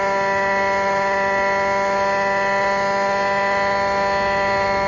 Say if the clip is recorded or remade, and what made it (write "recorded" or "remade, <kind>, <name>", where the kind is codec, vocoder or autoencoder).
recorded